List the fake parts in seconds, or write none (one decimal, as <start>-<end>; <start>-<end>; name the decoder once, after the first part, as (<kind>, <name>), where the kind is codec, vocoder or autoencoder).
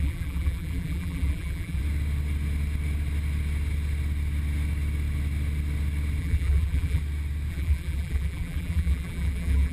0.0-1.8 (vocoder, BigVGAN v2); 6.2-7.0; 7.5-9.7